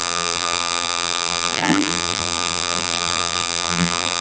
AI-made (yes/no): yes